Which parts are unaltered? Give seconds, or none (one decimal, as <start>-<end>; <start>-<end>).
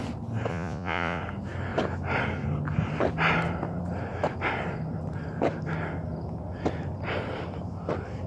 0.0-0.5; 1.2-8.3